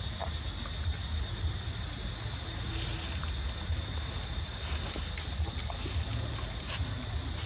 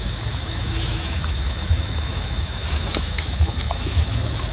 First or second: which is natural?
first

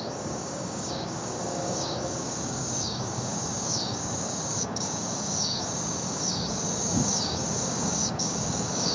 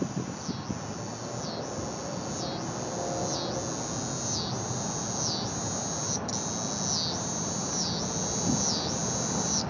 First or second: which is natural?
second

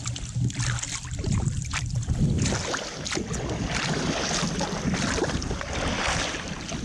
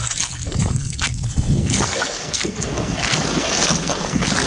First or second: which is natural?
first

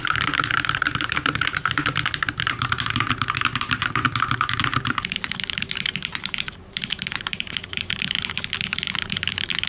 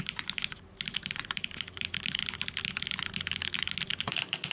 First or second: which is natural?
second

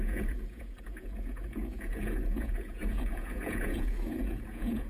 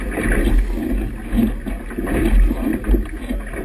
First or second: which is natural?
second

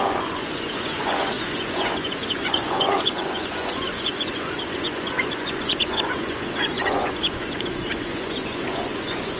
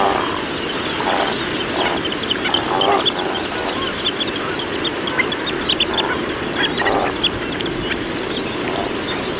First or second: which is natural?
second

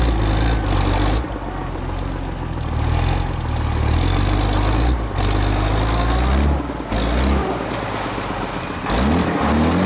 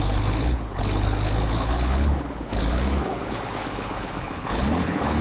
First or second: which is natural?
first